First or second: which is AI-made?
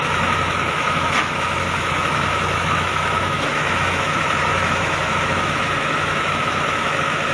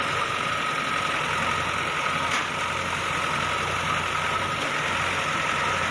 first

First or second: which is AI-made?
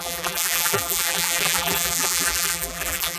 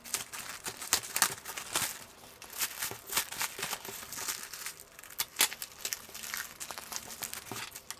first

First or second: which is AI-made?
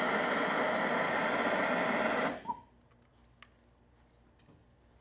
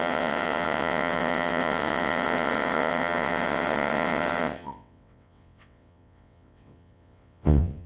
second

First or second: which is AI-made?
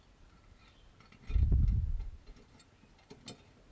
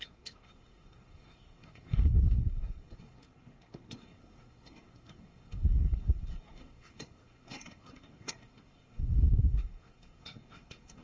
second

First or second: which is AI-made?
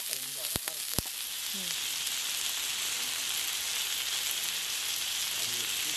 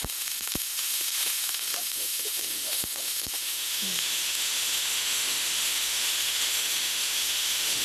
second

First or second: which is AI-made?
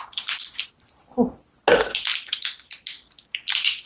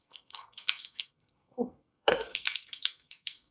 second